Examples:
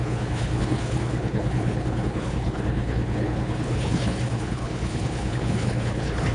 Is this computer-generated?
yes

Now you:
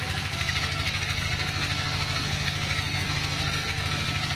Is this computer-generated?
yes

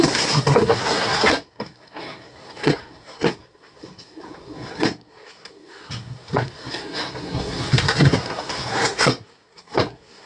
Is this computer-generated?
yes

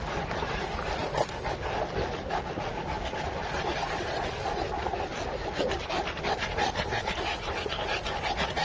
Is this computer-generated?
no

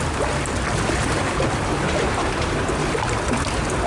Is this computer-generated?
no